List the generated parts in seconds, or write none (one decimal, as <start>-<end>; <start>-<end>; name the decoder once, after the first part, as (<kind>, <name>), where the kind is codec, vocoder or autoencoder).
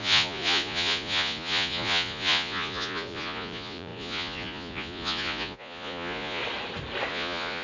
0.0-6.4 (vocoder, Vocos); 7.1-7.6